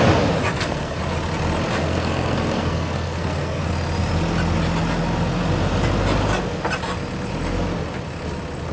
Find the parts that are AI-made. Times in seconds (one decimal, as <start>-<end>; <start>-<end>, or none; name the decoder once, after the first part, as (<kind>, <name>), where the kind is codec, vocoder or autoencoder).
0.5-1.0 (codec, SNAC); 1.8-3.6